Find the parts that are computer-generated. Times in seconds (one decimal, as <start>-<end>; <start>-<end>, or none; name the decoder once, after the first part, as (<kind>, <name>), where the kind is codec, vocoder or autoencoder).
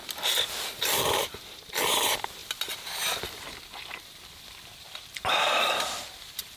0.5-6.6 (vocoder, BigVGAN v2)